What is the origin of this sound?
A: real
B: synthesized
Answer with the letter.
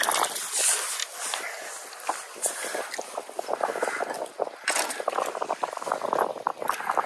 A